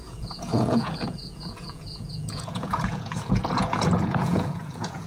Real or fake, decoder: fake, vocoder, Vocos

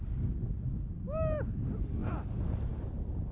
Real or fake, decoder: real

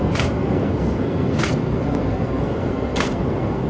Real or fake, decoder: fake, codec, SNAC